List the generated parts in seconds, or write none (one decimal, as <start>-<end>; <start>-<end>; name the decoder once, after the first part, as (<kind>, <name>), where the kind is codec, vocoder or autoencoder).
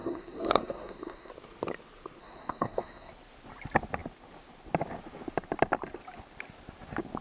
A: 0.0-1.3 (codec, SNAC); 2.2-3.1